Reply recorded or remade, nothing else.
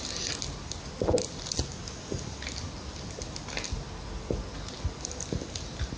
recorded